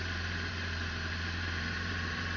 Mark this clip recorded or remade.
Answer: remade